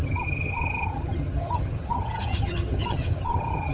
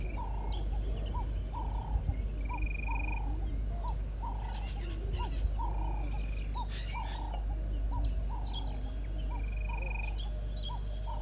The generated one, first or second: first